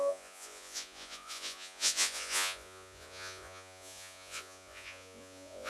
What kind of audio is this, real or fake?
fake